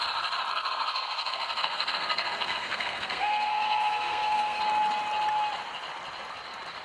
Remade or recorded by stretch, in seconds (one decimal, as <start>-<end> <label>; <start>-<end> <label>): 0.0-0.5 recorded; 0.5-4.6 remade; 4.6-6.8 recorded